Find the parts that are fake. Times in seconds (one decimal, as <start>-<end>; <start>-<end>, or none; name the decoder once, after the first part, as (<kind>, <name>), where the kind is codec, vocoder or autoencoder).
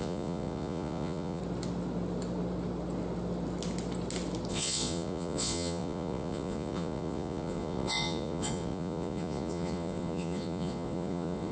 0.0-1.4 (vocoder, Vocos); 4.5-11.5